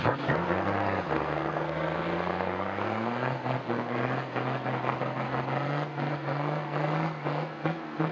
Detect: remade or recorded remade